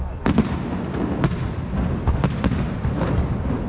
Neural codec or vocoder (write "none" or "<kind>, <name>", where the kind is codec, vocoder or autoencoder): none